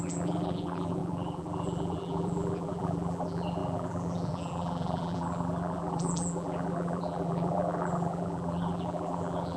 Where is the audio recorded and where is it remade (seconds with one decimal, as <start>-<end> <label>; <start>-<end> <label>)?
0.0-9.6 remade